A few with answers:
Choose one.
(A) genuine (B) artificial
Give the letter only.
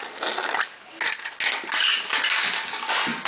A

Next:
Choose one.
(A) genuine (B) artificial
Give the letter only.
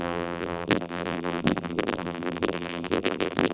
B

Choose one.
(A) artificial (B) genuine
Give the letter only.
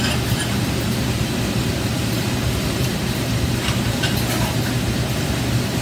A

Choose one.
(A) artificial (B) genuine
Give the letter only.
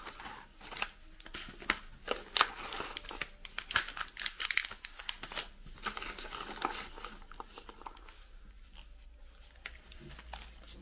B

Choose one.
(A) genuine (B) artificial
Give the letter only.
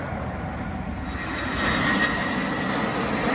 A